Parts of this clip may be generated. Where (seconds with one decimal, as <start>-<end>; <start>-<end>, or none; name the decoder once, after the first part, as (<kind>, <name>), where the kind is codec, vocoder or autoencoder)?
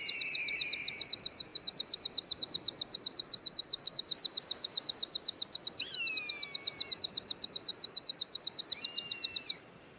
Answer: none